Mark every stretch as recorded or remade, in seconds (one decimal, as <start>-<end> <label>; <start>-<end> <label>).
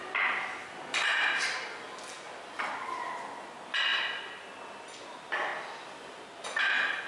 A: 0.0-7.1 recorded